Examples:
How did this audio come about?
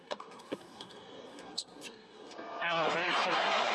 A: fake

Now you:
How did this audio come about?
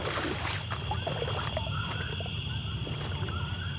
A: real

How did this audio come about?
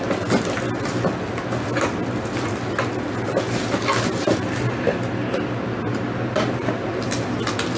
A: real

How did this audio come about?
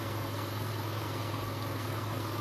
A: fake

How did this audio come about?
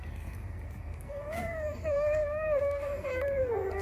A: fake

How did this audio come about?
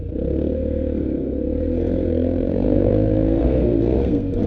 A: fake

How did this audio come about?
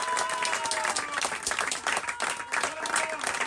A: real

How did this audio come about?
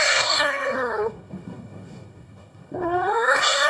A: fake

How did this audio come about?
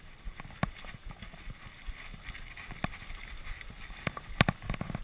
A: real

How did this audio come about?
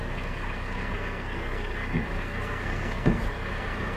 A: fake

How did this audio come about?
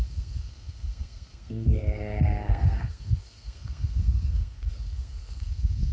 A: fake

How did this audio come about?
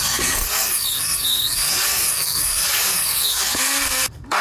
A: fake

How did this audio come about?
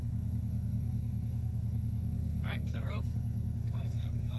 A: fake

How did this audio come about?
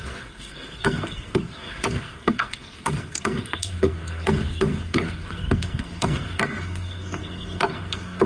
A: fake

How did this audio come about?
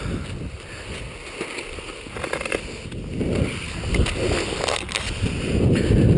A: real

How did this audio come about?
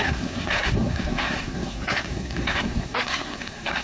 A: fake